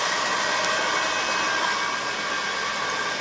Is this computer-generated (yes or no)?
no